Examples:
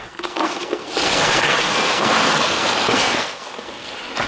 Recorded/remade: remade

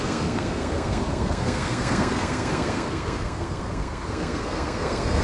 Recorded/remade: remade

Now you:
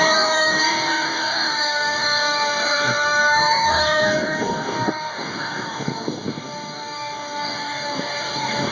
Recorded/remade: remade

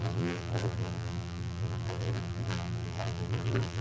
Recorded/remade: remade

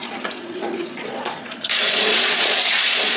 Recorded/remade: remade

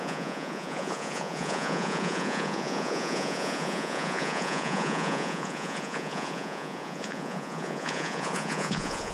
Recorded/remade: remade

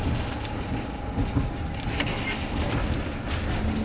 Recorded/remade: recorded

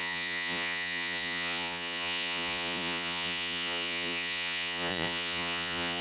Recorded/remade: remade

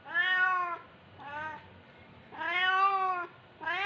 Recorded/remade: recorded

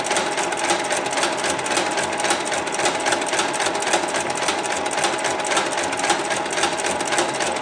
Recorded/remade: recorded